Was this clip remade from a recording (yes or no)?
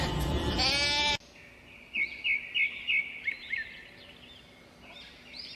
no